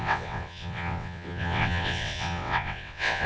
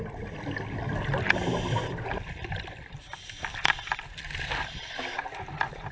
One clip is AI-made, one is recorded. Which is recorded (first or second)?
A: second